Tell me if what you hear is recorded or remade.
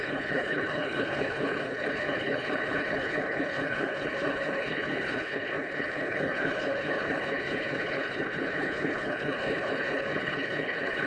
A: remade